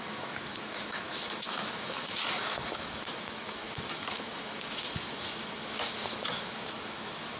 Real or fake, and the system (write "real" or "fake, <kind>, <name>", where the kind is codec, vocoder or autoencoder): fake, autoencoder, DAC-VAE